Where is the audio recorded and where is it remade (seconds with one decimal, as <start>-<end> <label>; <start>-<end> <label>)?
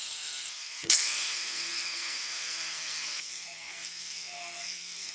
0.0-5.1 remade